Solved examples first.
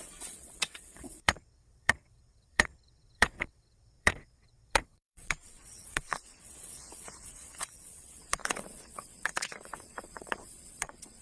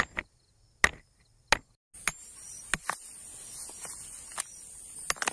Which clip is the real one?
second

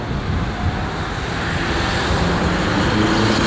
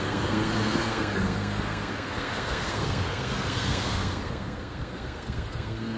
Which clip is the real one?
first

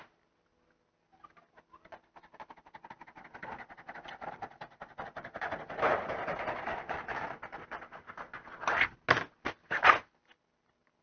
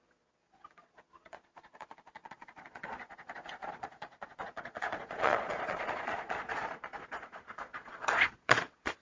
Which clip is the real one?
first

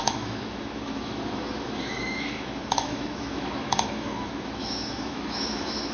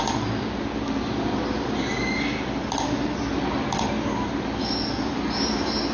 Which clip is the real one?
second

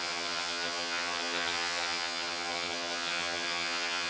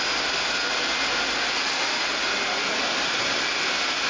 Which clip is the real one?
second